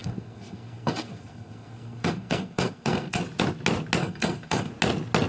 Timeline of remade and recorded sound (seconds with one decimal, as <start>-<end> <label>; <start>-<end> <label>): 0.0-3.2 remade; 3.2-4.0 recorded; 4.0-4.7 remade; 4.7-5.3 recorded

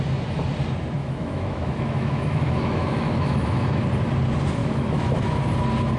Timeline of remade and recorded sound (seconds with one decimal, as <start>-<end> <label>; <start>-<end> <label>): 0.0-1.0 recorded; 1.0-3.8 remade; 3.8-4.6 recorded; 4.6-5.4 remade; 5.4-6.0 recorded

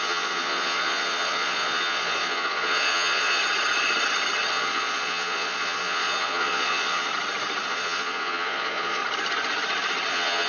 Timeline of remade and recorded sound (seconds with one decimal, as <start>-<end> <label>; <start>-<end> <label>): 0.0-3.4 remade; 3.4-4.5 recorded; 4.5-7.1 remade; 7.1-7.7 recorded; 7.7-9.0 remade; 9.0-10.1 recorded; 10.1-10.5 remade

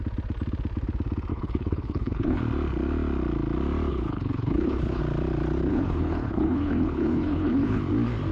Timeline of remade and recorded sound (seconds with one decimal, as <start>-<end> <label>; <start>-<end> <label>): 0.0-1.3 recorded; 1.3-2.4 remade; 2.4-3.9 recorded; 3.9-5.0 remade; 5.0-5.7 recorded; 5.7-7.8 remade; 7.8-8.3 recorded

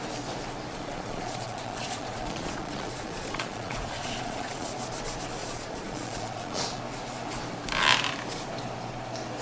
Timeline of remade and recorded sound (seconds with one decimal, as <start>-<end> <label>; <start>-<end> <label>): 0.0-0.7 recorded; 0.7-4.7 remade; 4.7-5.4 recorded; 5.4-6.8 remade; 6.8-9.4 recorded